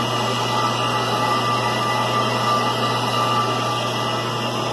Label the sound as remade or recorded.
recorded